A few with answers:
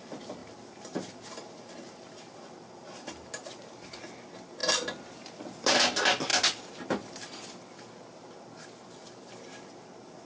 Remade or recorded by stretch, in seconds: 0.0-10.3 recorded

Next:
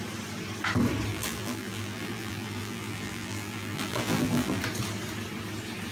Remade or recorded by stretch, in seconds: 0.0-1.1 recorded; 1.1-4.6 remade; 4.6-5.9 recorded

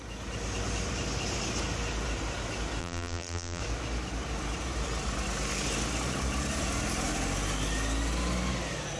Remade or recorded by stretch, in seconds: 0.0-2.8 recorded; 2.8-3.6 remade; 3.6-9.0 recorded

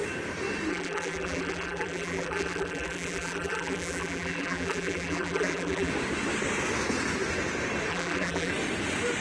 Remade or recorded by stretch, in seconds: 0.0-0.7 recorded; 0.7-5.9 remade; 5.9-7.9 recorded; 7.9-8.5 remade; 8.5-9.2 recorded

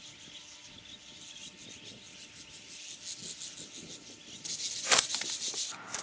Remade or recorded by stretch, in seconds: 0.0-6.0 recorded

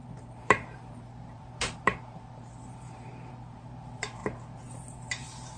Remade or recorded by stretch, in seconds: 0.0-5.6 remade